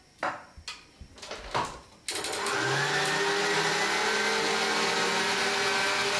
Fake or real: real